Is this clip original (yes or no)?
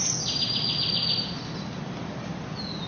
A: yes